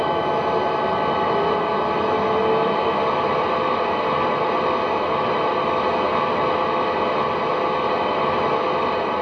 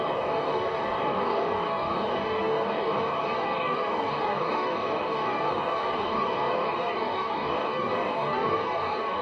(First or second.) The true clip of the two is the first